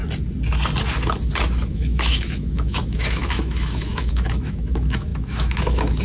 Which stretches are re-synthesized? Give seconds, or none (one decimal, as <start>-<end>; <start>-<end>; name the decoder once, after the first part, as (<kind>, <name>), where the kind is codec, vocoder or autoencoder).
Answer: 1.7-6.0 (autoencoder, DAC-VAE)